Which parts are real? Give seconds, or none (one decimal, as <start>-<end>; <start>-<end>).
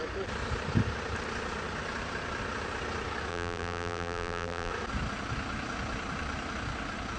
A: 0.0-3.3; 4.7-7.2